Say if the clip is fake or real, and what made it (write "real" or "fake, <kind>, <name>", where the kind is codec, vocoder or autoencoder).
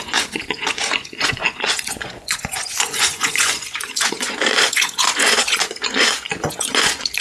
fake, vocoder, Vocos